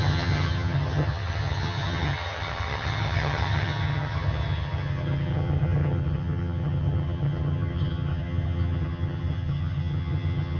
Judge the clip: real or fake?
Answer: fake